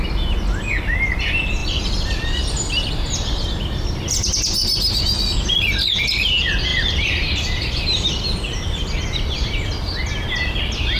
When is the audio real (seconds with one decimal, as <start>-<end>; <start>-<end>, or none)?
0.0-1.6; 5.6-6.7